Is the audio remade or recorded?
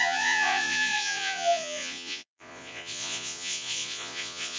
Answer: remade